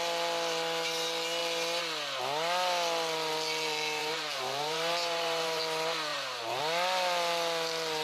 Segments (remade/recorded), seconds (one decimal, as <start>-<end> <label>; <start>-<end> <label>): 0.0-4.0 recorded; 4.0-5.6 remade; 5.6-6.1 recorded; 6.1-6.6 remade; 6.6-8.0 recorded